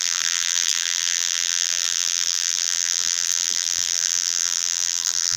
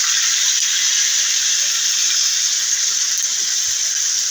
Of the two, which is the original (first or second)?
second